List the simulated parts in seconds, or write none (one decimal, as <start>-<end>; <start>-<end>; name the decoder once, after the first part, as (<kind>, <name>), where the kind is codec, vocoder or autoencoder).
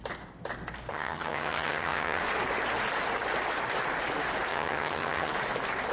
0.9-2.2 (vocoder, HiFi-GAN); 4.5-5.3